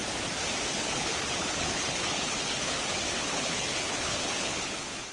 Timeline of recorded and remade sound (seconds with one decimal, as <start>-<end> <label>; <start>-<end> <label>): 0.0-0.7 recorded; 0.7-5.1 remade